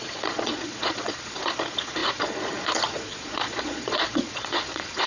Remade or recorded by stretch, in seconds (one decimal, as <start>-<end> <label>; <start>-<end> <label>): 0.0-5.1 remade